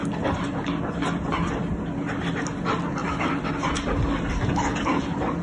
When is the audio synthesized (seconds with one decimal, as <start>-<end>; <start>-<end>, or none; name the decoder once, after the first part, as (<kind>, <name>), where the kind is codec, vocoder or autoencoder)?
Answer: none